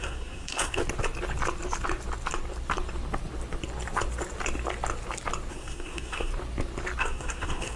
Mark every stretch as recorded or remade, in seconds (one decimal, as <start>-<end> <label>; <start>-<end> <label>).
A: 0.0-0.8 remade; 0.8-5.5 recorded; 5.5-6.3 remade; 6.3-7.0 recorded; 7.0-7.8 remade